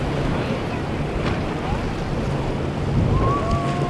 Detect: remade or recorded recorded